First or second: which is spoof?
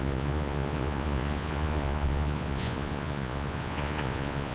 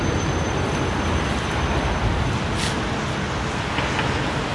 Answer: first